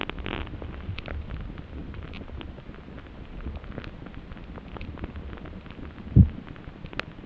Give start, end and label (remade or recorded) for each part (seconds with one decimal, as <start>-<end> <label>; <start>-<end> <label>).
0.0-1.8 recorded; 1.8-2.4 remade; 2.4-7.3 recorded